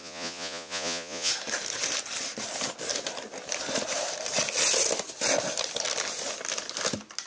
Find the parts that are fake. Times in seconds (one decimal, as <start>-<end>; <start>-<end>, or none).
0.0-1.3